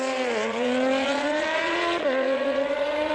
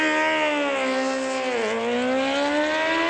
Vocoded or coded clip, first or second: first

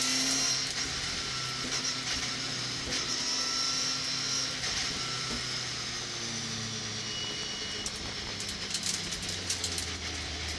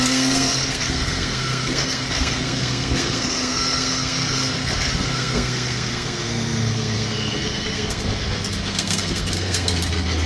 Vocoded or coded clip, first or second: second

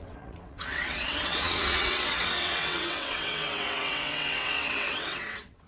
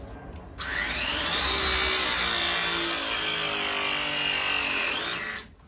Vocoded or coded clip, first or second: first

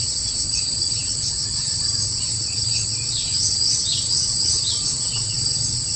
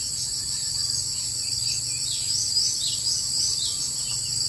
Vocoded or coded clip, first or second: first